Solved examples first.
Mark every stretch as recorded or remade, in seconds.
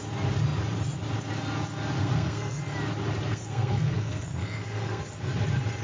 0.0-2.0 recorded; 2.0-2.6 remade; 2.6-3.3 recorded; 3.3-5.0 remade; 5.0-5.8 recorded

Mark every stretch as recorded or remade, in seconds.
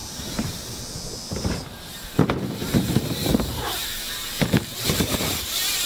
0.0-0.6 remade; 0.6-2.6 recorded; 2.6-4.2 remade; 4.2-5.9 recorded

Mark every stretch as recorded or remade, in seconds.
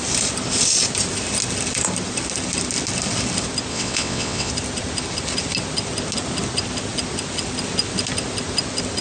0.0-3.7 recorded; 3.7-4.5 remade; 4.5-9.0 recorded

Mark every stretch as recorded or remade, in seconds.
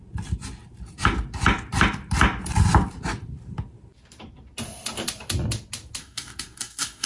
0.0-6.0 recorded; 6.0-7.1 remade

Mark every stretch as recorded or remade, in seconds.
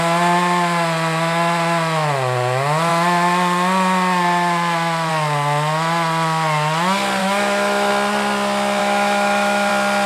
0.0-7.2 recorded; 7.2-7.9 remade; 7.9-8.8 recorded; 8.8-9.7 remade; 9.7-10.1 recorded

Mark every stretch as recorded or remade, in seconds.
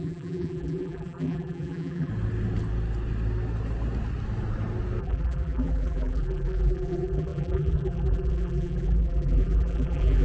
0.0-2.1 remade; 2.1-5.0 recorded; 5.0-10.2 remade